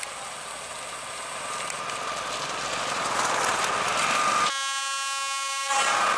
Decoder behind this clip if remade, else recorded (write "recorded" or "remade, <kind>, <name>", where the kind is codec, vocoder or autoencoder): recorded